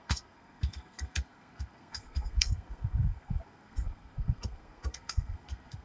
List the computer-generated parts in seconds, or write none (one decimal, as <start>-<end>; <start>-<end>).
0.0-5.8